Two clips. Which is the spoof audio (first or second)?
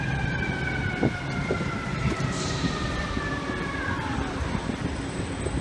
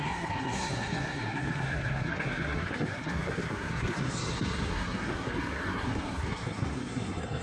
second